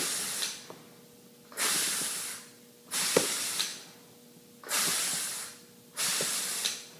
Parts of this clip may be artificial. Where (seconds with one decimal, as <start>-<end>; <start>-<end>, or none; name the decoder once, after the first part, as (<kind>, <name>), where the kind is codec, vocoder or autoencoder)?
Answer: none